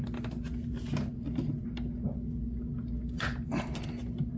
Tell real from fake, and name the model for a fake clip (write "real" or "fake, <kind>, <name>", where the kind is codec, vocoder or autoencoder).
real